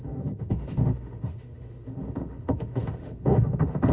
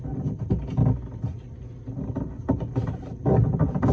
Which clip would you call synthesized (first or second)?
first